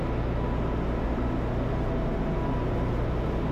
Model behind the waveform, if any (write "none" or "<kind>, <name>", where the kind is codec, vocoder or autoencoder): none